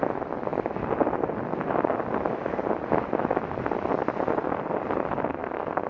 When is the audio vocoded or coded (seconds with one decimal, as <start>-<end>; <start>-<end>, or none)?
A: 5.3-5.9